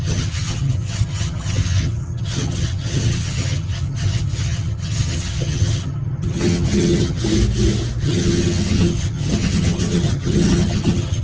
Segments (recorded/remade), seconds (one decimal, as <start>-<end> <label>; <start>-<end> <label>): 0.0-7.2 remade; 7.2-8.0 recorded; 8.0-11.2 remade

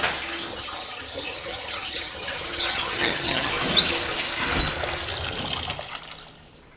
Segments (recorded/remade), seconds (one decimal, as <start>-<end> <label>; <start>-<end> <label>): 0.0-0.5 recorded; 0.5-3.5 remade; 3.5-6.8 recorded

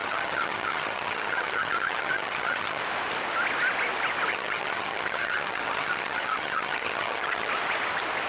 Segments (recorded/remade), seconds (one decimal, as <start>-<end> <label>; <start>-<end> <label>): 0.0-2.8 remade; 2.8-4.3 recorded; 4.3-7.5 remade; 7.5-8.3 recorded

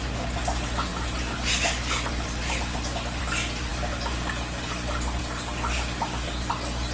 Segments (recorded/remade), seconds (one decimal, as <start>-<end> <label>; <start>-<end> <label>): 0.0-6.9 recorded

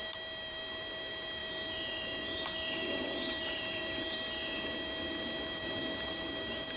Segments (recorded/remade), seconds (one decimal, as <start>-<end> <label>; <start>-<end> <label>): 0.0-6.8 recorded

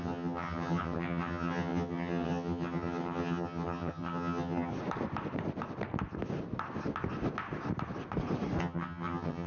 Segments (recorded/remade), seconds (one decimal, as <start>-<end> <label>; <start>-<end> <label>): 0.0-4.7 remade; 4.7-8.6 recorded; 8.6-9.5 remade

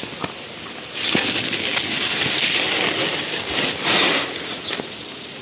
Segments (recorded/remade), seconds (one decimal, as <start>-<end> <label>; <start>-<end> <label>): 0.0-5.4 recorded